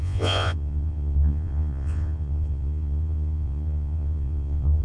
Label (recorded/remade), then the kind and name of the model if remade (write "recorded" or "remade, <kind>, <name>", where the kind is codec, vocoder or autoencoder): remade, vocoder, Vocos